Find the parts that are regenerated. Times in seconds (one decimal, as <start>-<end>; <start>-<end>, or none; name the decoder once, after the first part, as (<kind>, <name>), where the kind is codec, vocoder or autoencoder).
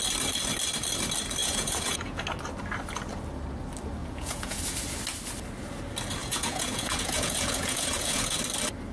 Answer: 1.4-2.2 (vocoder, Vocos); 4.0-4.6; 6.2-8.4